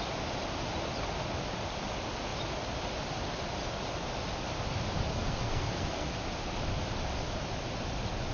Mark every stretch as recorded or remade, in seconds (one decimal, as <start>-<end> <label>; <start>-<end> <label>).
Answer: 0.0-5.1 recorded; 5.1-6.1 remade; 6.1-8.3 recorded